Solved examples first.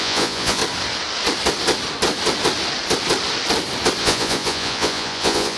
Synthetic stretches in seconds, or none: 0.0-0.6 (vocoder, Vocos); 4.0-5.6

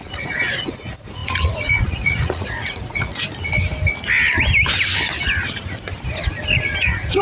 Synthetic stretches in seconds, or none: 0.0-3.1 (vocoder, Vocos); 6.8-7.2

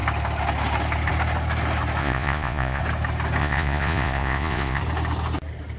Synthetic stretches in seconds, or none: 2.0-2.8 (vocoder, Vocos); 3.4-4.8

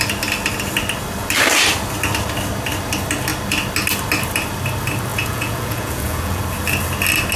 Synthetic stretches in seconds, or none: 5.1-6.4 (vocoder, Vocos)